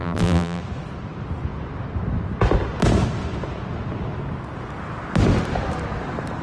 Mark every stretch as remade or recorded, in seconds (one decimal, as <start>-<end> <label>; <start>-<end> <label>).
0.0-0.6 remade; 0.6-6.4 recorded